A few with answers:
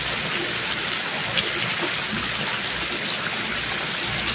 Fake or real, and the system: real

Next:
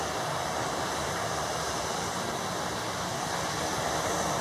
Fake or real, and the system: fake, vocoder, BigVGAN v2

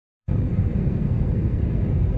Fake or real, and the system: fake, codec, SNAC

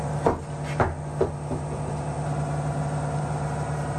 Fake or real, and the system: real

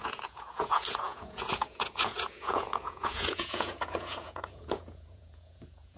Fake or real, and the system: fake, vocoder, Vocos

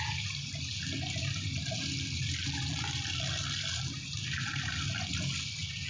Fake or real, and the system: real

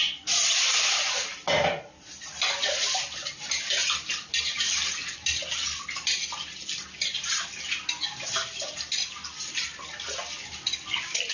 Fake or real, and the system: real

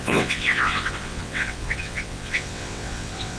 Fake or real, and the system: fake, vocoder, WaveNeXt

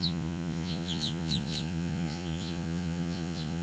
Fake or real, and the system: fake, vocoder, Vocos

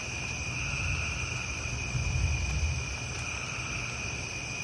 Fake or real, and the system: real